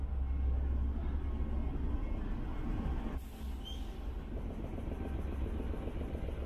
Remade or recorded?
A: recorded